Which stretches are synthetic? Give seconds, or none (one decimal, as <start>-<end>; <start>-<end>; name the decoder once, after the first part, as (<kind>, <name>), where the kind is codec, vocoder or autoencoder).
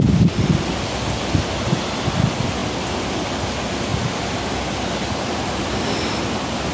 none